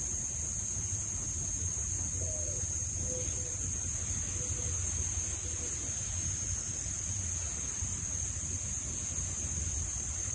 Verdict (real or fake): real